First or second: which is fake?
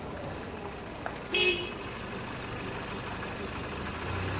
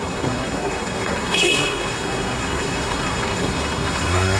second